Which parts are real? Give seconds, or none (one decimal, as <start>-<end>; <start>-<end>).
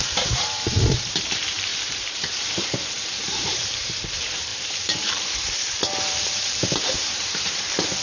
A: none